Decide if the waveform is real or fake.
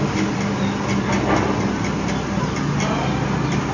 real